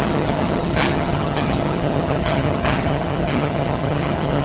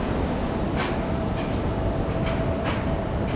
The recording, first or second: second